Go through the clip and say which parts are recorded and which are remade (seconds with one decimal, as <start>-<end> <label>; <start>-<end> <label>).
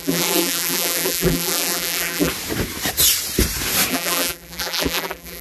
0.0-2.3 remade; 2.3-3.9 recorded; 3.9-5.4 remade